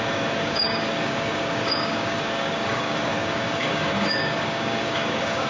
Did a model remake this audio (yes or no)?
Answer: yes